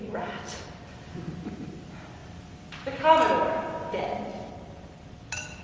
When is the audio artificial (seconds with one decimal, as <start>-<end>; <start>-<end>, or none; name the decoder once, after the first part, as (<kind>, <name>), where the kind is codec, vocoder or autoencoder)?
2.2-2.7 (vocoder, BigVGAN v2); 4.3-5.6